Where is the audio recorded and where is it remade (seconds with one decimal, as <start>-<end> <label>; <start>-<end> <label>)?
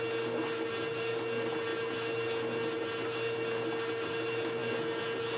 0.0-5.4 recorded